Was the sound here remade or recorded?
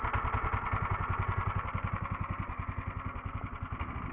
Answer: recorded